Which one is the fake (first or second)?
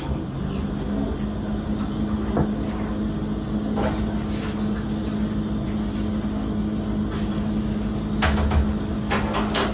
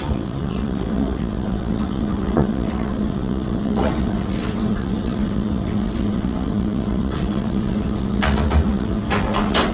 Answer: second